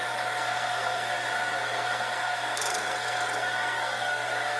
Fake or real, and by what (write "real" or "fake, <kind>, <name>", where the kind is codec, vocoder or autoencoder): fake, codec, SNAC